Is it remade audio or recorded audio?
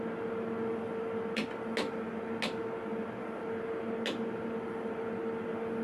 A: recorded